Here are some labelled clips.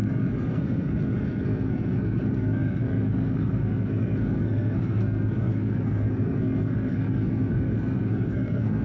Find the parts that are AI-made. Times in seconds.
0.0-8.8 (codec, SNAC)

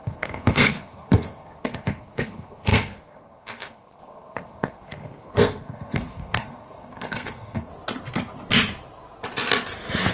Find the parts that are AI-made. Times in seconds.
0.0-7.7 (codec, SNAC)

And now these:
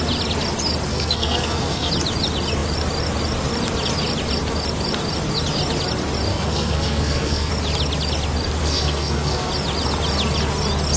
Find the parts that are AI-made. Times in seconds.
0.9-1.9 (codec, SNAC); 6.3-7.5; 8.6-9.5

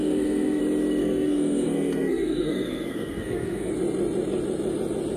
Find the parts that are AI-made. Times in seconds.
0.0-0.6 (codec, SNAC); 1.0-3.7